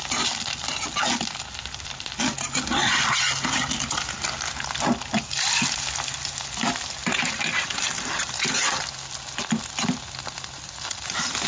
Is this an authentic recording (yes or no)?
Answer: yes